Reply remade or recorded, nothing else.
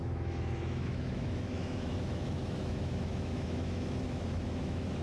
remade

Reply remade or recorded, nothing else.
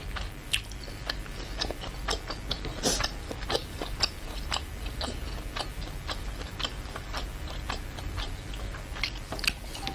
recorded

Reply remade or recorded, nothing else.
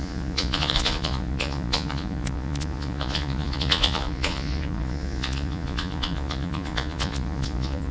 remade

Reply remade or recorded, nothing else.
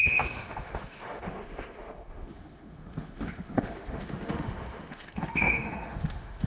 remade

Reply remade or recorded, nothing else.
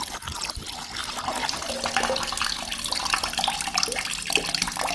recorded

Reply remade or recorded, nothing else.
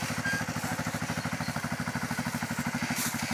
recorded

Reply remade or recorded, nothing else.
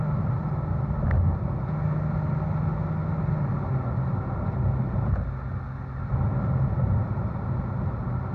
recorded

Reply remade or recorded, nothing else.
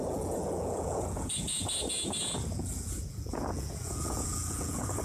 remade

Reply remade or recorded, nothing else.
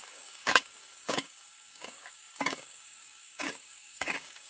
remade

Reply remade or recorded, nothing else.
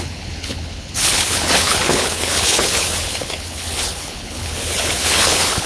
remade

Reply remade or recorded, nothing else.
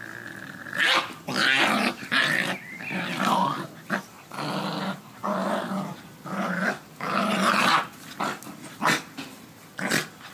recorded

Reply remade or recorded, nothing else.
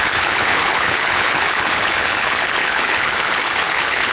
remade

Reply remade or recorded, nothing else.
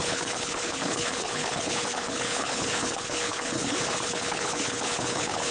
remade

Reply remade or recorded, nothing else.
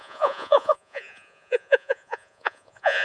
remade